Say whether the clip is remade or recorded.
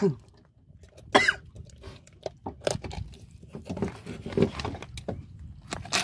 recorded